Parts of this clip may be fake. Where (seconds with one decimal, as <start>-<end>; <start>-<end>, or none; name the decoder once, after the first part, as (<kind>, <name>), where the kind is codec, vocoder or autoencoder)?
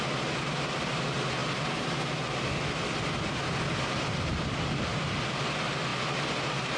none